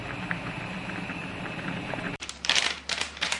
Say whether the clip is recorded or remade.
remade